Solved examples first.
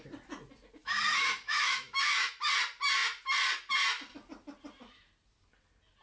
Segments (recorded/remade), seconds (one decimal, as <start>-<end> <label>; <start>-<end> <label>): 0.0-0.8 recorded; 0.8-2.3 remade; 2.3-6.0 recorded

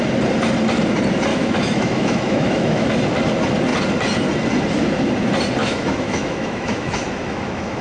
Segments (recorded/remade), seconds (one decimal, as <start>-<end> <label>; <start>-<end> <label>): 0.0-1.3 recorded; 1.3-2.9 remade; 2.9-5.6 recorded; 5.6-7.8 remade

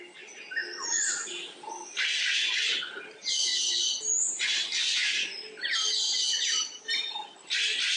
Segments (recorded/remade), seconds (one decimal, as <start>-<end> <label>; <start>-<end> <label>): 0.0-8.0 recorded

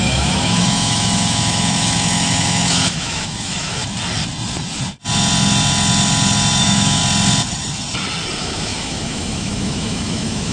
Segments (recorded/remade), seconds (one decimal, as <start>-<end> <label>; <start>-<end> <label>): 0.0-3.8 remade; 3.8-6.6 recorded; 6.6-7.0 remade; 7.0-8.4 recorded; 8.4-10.5 remade

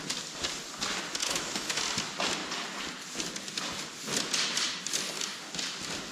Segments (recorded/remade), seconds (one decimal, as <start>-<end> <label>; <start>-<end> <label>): 0.0-1.2 recorded; 1.2-1.8 remade; 1.8-6.1 recorded

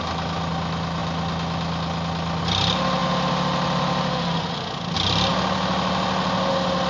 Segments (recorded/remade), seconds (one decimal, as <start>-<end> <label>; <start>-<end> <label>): 0.0-6.9 recorded